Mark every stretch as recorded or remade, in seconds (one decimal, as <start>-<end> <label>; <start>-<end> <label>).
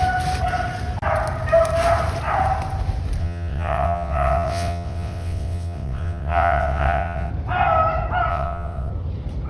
0.0-3.2 recorded; 3.2-7.3 remade; 7.3-8.3 recorded; 8.3-8.9 remade; 8.9-9.5 recorded